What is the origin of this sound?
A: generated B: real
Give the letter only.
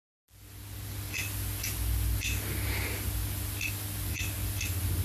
B